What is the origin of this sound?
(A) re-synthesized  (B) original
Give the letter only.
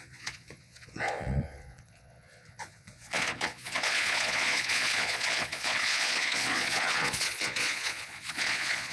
A